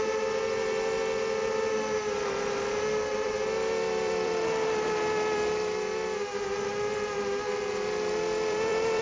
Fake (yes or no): yes